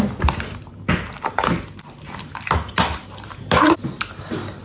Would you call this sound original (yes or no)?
yes